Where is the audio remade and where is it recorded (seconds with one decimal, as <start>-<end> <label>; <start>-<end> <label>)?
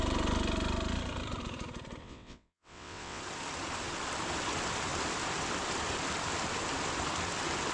0.0-2.0 recorded; 2.0-3.2 remade; 3.2-7.7 recorded